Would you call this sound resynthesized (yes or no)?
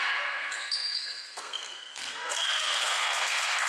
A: yes